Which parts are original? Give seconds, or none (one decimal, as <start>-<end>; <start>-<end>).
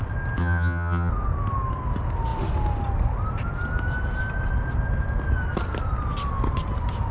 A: 0.0-0.4; 1.1-7.1